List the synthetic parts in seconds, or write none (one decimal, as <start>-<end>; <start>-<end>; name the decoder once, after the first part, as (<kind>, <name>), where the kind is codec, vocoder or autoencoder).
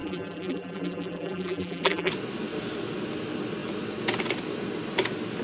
0.0-2.1 (vocoder, BigVGAN v2)